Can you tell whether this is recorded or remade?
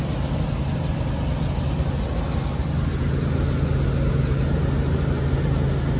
recorded